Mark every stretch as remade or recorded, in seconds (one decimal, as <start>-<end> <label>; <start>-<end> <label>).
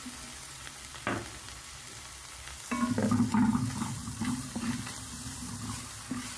0.0-4.0 recorded; 4.0-5.5 remade; 5.5-6.4 recorded